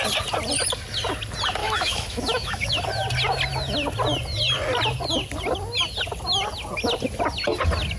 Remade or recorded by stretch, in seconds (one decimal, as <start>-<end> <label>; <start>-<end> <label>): 0.0-1.6 recorded; 1.6-2.8 remade; 2.8-8.0 recorded